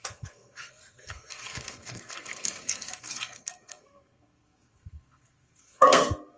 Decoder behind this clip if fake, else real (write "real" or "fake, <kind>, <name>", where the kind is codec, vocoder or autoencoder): fake, codec, SNAC